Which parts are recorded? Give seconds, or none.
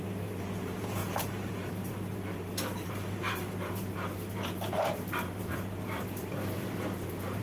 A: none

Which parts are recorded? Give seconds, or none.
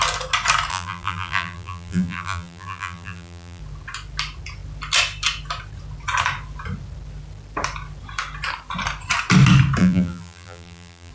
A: 0.0-0.7; 3.6-9.8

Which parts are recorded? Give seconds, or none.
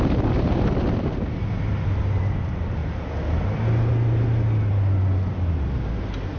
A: 0.0-6.4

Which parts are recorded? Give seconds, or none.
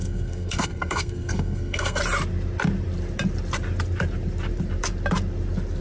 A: 2.0-5.8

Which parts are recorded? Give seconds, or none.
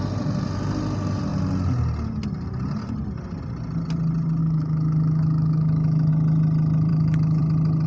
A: 0.0-4.4; 6.1-6.9; 7.4-7.9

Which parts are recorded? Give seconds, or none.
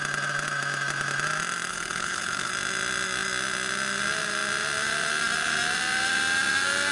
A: 0.0-1.7; 2.5-6.9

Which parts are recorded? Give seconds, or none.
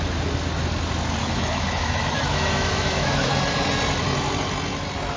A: 0.0-1.2; 3.3-5.2